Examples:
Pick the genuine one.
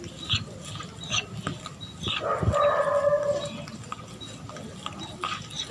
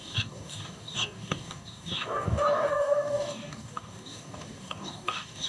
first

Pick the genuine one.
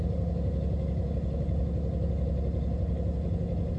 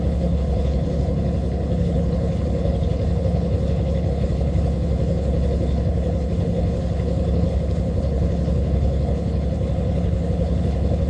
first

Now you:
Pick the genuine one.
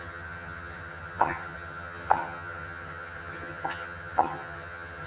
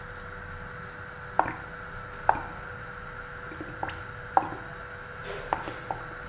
second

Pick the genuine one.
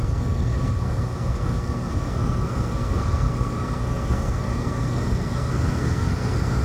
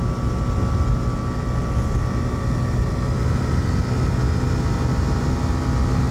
second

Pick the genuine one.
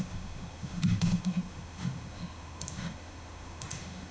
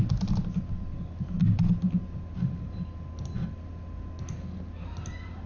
second